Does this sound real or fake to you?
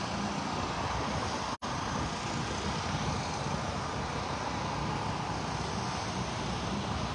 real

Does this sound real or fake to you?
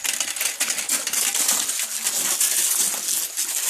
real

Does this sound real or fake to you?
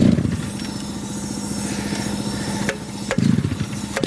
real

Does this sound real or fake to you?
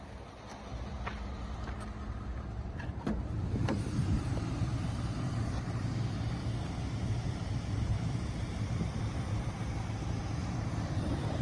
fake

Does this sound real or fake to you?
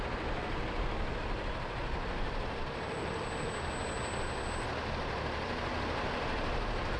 real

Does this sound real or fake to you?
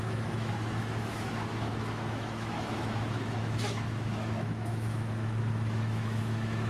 fake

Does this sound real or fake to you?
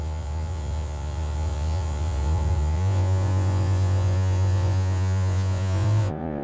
fake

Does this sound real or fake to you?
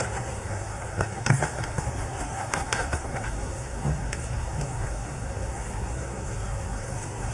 fake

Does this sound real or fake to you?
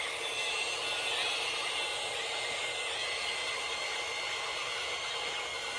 real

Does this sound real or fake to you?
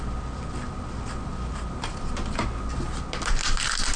real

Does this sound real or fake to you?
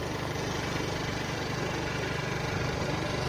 fake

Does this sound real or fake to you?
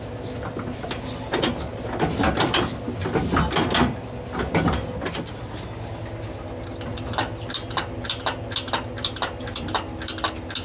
real